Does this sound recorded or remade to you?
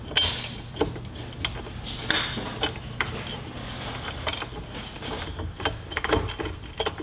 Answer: recorded